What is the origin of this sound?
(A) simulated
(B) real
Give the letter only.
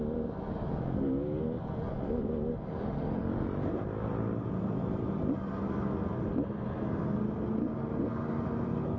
B